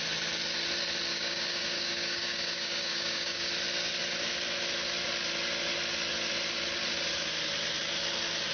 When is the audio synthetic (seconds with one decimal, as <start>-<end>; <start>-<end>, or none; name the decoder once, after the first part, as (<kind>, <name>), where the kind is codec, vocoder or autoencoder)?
1.1-3.5 (codec, DAC)